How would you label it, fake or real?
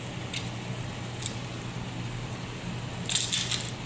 real